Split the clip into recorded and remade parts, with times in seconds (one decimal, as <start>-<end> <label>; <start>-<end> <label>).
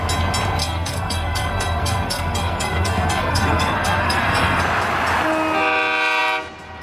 0.0-0.6 recorded; 0.6-4.6 remade; 4.6-6.8 recorded